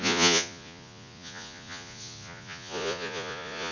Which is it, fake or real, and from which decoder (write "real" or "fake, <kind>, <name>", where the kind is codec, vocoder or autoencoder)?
fake, vocoder, Vocos